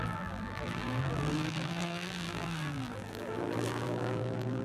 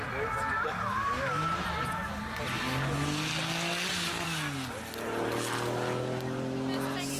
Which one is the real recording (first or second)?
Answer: second